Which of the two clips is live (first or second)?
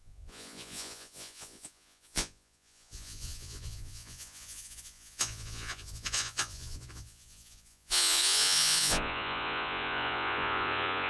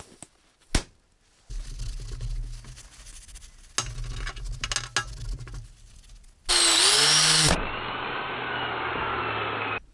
second